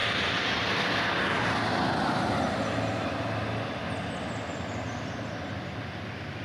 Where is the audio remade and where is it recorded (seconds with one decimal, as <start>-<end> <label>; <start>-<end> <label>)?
0.0-6.4 recorded